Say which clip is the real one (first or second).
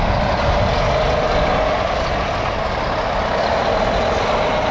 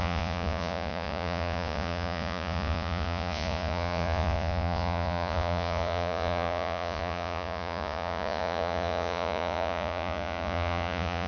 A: first